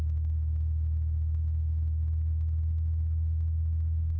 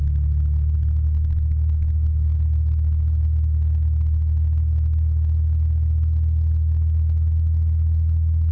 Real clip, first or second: second